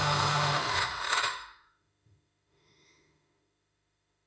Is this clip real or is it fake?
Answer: fake